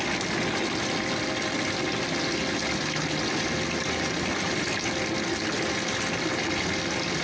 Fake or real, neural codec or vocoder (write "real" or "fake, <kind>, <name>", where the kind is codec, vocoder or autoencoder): real